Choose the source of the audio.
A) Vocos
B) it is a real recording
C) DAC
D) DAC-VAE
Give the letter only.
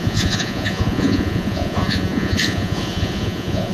A